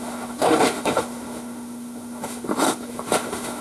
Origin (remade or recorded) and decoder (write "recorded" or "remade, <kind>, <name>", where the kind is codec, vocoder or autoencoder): remade, autoencoder, DAC-VAE